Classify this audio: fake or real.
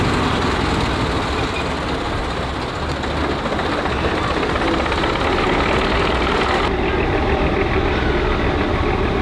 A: real